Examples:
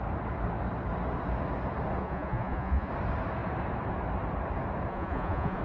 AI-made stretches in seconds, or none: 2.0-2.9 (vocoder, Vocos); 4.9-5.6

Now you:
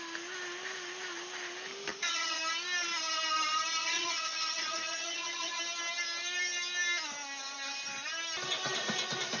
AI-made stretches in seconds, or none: 1.9-2.4 (vocoder, Vocos); 3.8-5.6

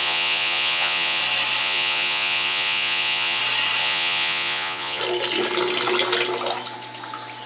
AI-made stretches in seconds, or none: 0.0-1.2 (vocoder, Vocos); 1.6-3.4; 3.8-5.0

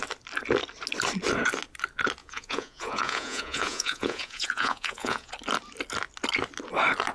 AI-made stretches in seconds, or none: 2.2-5.3 (vocoder, Vocos)

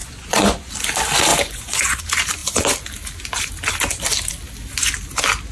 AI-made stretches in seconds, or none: 0.0-0.7 (vocoder, Vocos); 1.3-2.0